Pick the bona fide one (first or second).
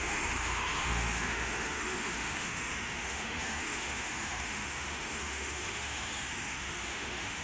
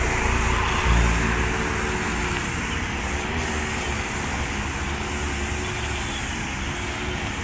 second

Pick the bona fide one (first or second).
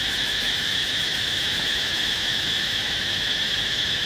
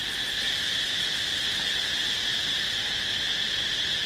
second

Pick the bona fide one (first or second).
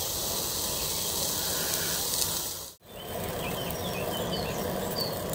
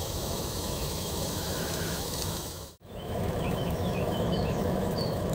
first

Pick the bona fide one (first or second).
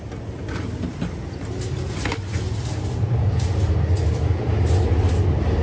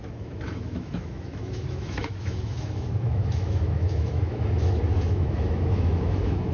first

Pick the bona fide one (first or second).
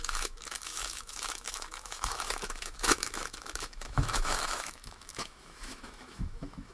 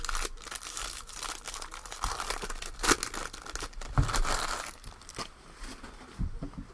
second